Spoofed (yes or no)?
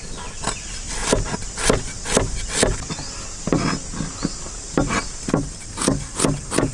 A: no